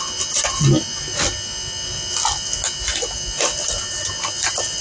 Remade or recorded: recorded